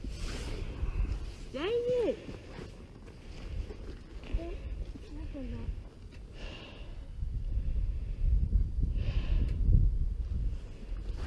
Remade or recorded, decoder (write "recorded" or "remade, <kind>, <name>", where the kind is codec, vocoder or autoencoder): recorded